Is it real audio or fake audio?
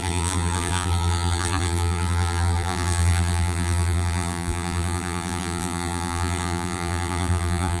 fake